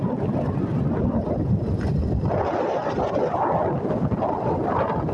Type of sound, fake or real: real